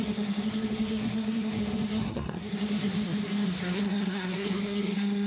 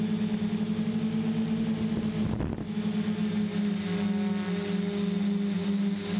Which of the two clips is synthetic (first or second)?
first